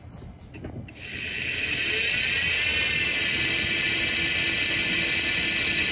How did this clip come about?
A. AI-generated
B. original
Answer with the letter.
B